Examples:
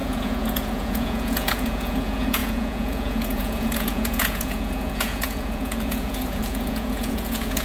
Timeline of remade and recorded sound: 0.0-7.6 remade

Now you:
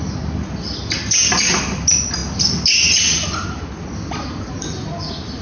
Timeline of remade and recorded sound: 0.0-5.4 recorded

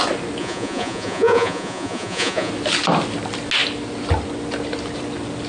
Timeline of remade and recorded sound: 0.0-0.4 recorded; 0.4-2.5 remade; 2.5-5.5 recorded

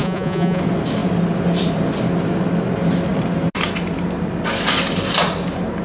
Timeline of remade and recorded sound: 0.0-0.6 remade; 0.6-5.8 recorded